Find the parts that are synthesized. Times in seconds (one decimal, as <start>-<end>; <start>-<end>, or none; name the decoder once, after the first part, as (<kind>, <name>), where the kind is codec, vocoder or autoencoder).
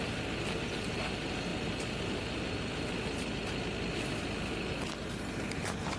none